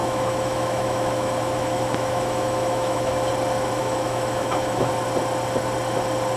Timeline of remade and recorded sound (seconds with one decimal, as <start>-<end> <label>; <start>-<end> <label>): 0.0-3.3 remade; 3.3-3.8 recorded; 3.8-4.9 remade; 4.9-6.4 recorded